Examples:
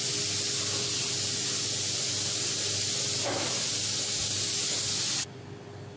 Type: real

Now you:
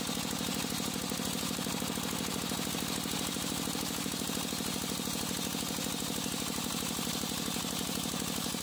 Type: real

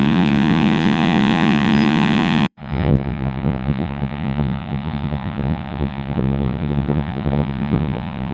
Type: fake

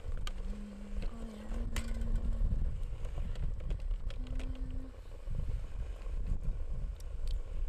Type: real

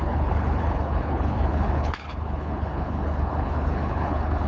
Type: fake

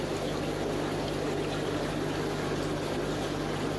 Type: real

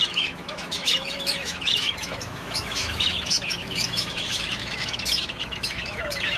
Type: fake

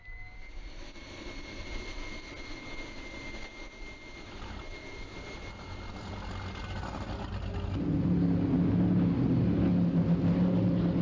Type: real